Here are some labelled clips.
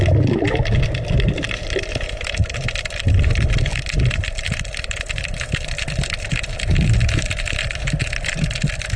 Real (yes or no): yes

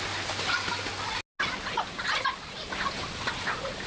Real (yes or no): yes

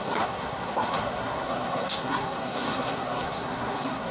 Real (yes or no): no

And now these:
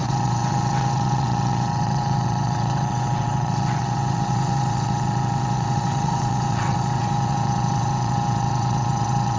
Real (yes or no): no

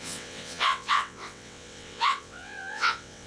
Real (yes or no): no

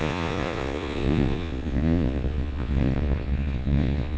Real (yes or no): no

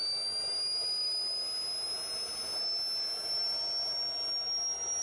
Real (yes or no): yes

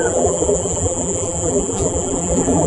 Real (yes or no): no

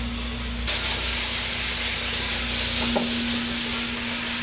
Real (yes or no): yes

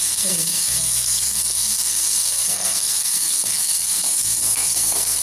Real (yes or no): no